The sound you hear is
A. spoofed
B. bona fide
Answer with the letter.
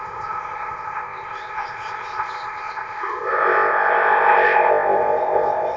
A